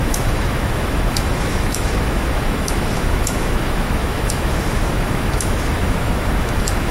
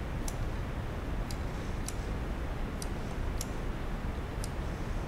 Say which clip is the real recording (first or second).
second